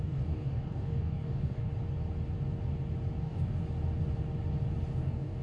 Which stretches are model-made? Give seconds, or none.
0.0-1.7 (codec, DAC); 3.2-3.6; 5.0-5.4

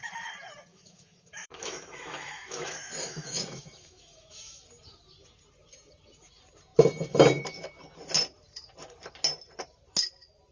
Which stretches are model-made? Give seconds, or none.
0.7-4.6 (autoencoder, DAC-VAE)

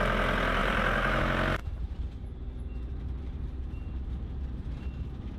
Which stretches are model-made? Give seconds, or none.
0.6-1.2 (vocoder, BigVGAN v2); 1.6-4.8

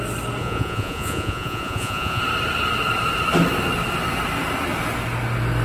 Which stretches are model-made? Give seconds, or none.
0.4-2.2 (vocoder, Vocos)

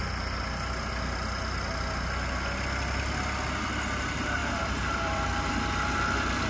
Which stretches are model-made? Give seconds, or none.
4.4-5.5 (vocoder, BigVGAN v2)

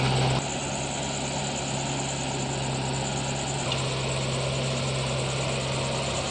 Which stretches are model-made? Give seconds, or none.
none